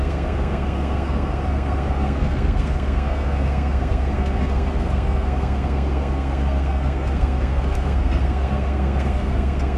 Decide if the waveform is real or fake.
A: fake